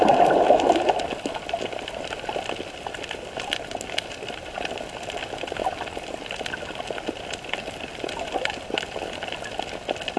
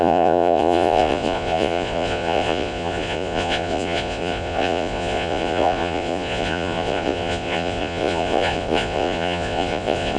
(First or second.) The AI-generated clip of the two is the second